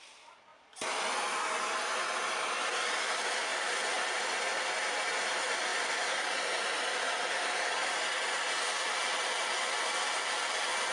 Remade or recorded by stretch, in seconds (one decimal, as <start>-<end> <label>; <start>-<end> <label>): 0.0-0.5 recorded; 0.5-1.5 remade; 1.5-3.5 recorded; 3.5-4.7 remade; 4.7-10.9 recorded